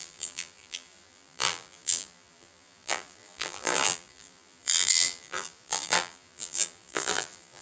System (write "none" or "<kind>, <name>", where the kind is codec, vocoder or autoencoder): vocoder, BigVGAN v2